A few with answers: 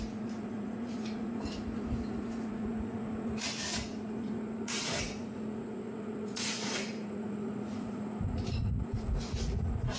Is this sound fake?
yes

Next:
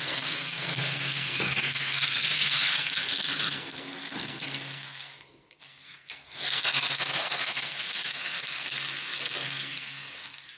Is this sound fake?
yes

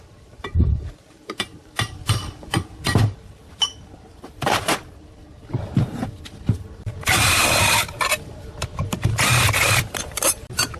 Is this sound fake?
yes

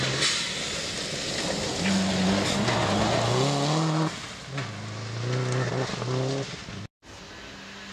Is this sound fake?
no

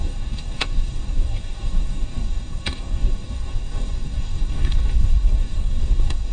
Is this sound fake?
yes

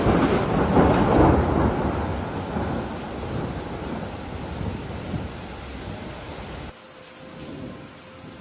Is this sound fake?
no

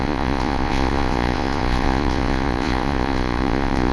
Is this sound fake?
yes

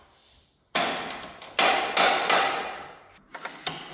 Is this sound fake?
no